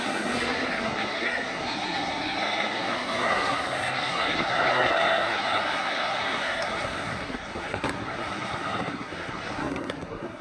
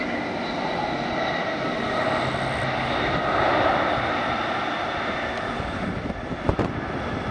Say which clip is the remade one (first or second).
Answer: first